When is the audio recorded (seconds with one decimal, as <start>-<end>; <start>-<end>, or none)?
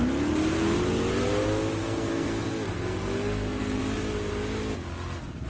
0.0-1.8; 3.8-5.5